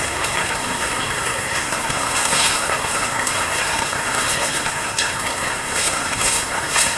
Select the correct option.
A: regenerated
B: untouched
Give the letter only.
A